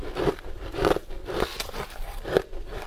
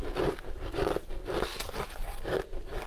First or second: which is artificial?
first